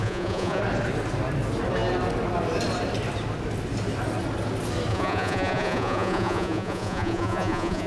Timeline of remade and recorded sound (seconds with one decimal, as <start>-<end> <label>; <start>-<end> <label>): 0.0-0.6 remade; 0.6-4.9 recorded; 4.9-7.9 remade

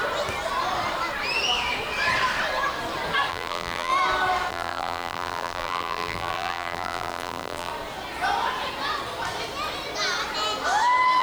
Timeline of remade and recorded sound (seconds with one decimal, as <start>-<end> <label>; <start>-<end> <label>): 0.0-3.3 recorded; 3.3-3.9 remade; 3.9-4.5 recorded; 4.5-7.7 remade; 7.7-11.2 recorded

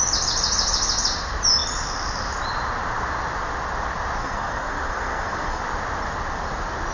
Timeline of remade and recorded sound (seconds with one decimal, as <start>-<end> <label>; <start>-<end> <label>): 0.0-4.2 recorded; 4.2-5.6 remade; 5.6-6.9 recorded